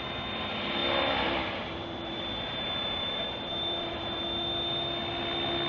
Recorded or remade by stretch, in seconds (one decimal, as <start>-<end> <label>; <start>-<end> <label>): 0.0-0.8 recorded; 0.8-4.2 remade; 4.2-5.7 recorded

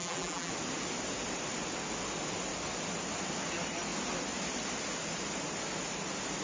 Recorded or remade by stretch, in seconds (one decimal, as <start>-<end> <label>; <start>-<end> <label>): 0.0-0.5 remade; 0.5-6.4 recorded

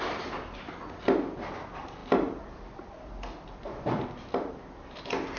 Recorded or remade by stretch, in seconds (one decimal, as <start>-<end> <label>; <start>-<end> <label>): 0.0-2.0 recorded; 2.0-5.0 remade; 5.0-5.4 recorded

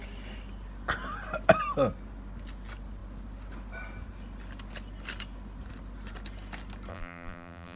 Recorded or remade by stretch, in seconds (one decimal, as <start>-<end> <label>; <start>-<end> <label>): 0.0-6.9 recorded; 6.9-7.8 remade

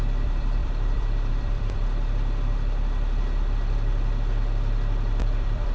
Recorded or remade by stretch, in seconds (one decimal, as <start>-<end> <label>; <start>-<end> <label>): 0.0-1.8 remade; 1.8-5.2 recorded; 5.2-5.7 remade

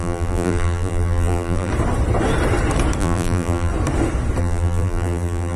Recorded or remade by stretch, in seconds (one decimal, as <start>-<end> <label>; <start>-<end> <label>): 0.0-1.7 remade; 1.7-3.0 recorded; 3.0-3.7 remade; 3.7-4.4 recorded; 4.4-5.6 remade

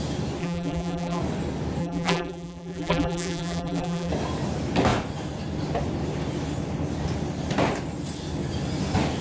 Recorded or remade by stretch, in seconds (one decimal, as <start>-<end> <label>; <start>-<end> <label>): 0.0-0.4 recorded; 0.4-1.2 remade; 1.2-1.8 recorded; 1.8-4.1 remade; 4.1-9.2 recorded